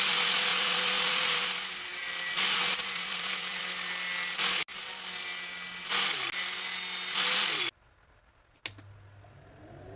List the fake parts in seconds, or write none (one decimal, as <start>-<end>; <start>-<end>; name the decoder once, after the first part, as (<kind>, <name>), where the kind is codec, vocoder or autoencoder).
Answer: 0.5-3.6 (vocoder, BigVGAN v2)